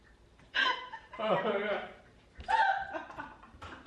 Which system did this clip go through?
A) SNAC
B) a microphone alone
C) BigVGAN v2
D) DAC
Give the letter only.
C